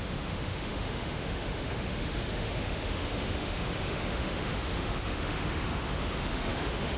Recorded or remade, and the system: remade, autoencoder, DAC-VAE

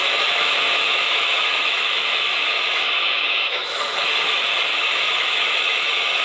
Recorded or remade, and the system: remade, autoencoder, DAC-VAE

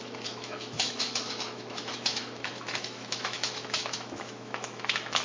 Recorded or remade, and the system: remade, autoencoder, DAC-VAE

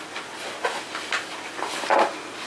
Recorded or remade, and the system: recorded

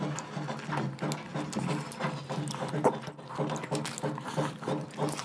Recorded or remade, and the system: recorded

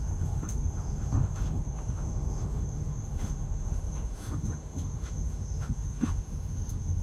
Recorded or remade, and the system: remade, autoencoder, DAC-VAE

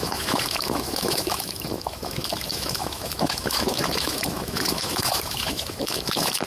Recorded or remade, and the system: remade, autoencoder, DAC-VAE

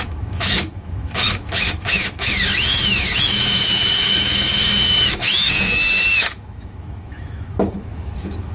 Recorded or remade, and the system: remade, autoencoder, DAC-VAE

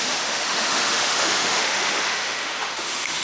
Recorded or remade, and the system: remade, autoencoder, DAC-VAE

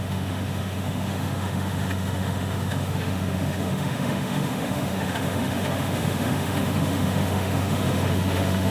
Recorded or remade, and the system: remade, autoencoder, DAC-VAE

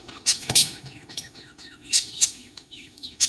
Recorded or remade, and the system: remade, autoencoder, DAC-VAE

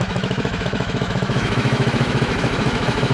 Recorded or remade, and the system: remade, autoencoder, DAC-VAE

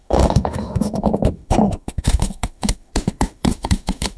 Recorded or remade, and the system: remade, autoencoder, DAC-VAE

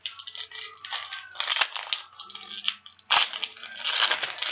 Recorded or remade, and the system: recorded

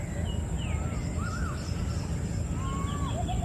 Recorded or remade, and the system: recorded